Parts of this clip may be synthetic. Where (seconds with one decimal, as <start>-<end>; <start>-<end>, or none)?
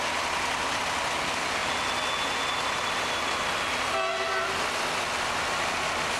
none